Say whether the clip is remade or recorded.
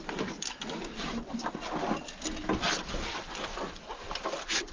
recorded